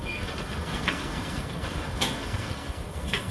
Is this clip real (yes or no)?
no